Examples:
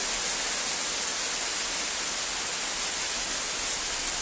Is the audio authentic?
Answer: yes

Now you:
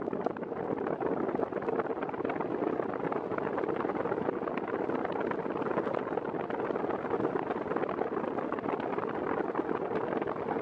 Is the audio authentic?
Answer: yes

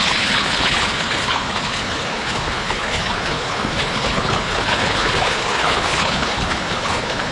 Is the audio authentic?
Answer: no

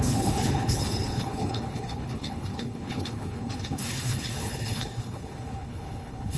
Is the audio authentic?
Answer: no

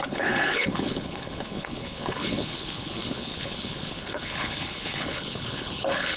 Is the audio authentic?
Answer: no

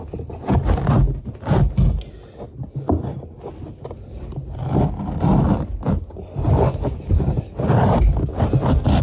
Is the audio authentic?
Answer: yes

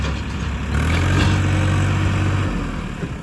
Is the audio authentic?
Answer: yes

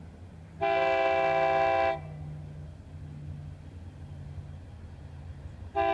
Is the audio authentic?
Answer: yes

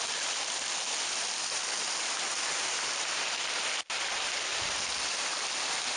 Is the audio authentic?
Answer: yes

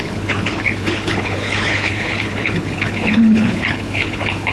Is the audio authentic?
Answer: no